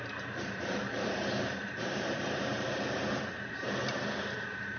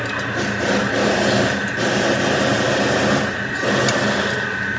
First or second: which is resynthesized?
first